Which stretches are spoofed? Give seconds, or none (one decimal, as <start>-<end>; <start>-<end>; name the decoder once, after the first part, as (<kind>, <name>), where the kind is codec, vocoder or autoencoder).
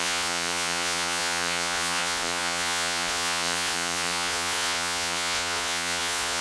0.0-6.4 (vocoder, Vocos)